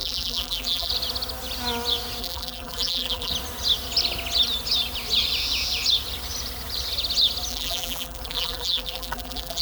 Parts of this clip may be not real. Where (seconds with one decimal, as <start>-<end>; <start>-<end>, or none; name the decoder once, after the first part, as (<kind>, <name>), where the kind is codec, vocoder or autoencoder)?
0.0-0.9 (vocoder, BigVGAN v2); 2.2-3.3; 7.5-9.6